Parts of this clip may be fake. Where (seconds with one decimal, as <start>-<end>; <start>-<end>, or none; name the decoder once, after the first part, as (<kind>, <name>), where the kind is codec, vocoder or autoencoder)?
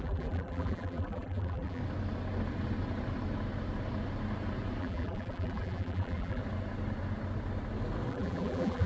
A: 0.0-1.8 (vocoder, BigVGAN v2); 4.8-6.4; 8.1-8.9